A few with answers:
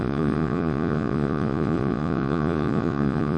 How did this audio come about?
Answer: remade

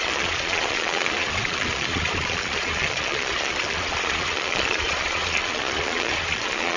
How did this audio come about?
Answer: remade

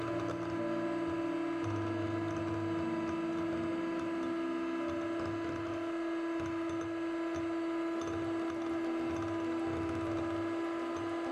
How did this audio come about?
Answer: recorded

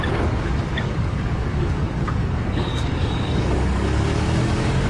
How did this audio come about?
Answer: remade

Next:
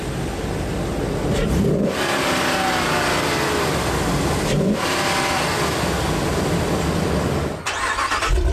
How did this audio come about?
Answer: recorded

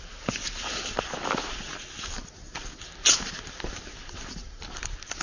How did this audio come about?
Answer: recorded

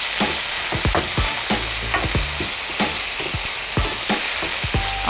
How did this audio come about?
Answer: recorded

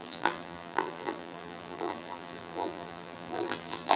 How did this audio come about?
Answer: remade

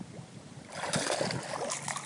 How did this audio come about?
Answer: recorded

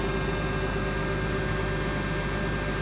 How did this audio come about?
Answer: recorded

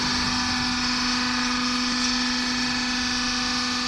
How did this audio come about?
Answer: recorded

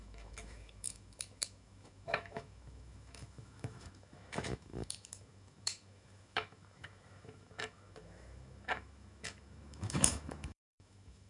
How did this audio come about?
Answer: remade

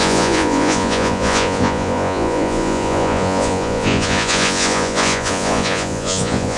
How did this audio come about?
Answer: remade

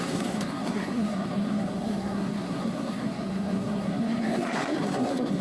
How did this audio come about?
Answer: remade